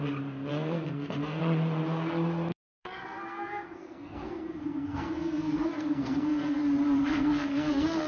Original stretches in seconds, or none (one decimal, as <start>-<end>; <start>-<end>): 0.0-0.5; 1.4-2.5; 6.6-7.0